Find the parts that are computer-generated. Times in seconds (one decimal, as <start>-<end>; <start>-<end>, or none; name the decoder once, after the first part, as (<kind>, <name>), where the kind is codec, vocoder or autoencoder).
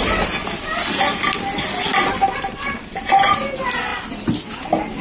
1.9-3.4 (vocoder, BigVGAN v2)